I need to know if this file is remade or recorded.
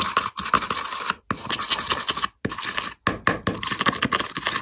recorded